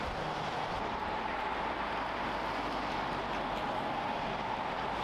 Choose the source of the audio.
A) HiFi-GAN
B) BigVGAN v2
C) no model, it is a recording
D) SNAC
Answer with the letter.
C